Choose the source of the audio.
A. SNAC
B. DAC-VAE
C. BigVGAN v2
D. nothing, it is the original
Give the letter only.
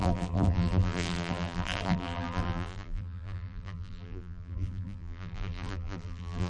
C